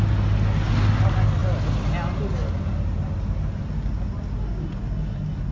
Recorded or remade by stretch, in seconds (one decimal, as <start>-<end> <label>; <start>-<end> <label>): 0.0-5.5 recorded